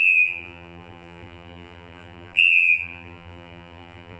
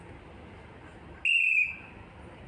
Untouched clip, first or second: second